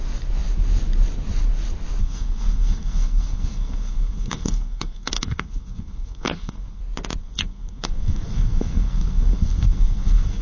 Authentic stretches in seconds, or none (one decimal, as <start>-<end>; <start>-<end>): 0.0-2.0; 6.8-7.2